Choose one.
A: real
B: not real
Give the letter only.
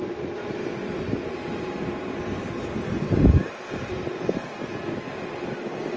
A